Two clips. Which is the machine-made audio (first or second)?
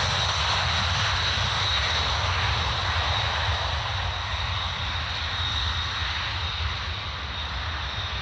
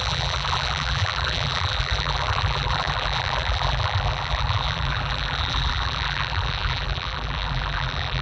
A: second